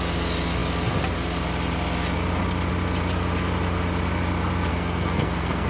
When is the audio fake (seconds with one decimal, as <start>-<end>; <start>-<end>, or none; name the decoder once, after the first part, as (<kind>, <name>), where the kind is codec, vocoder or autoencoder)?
4.7-5.7 (codec, SNAC)